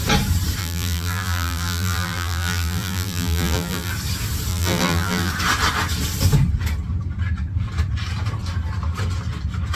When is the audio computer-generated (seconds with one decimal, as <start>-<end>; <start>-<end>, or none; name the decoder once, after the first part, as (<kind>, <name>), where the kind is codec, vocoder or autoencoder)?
0.6-3.9 (vocoder, BigVGAN v2); 4.5-5.3